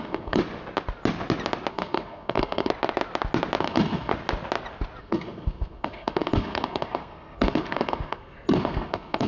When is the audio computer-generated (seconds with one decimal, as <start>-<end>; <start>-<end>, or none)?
0.0-0.4; 1.7-2.7; 3.6-4.1; 5.0-9.3